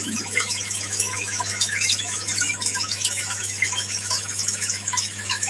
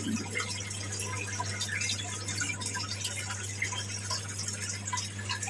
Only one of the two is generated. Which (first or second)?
first